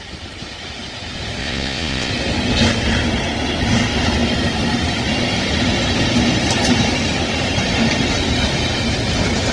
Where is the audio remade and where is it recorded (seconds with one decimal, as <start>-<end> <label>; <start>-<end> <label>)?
0.0-1.4 recorded; 1.4-2.1 remade; 2.1-9.5 recorded